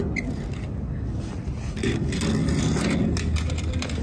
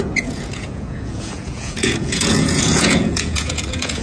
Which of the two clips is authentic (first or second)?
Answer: first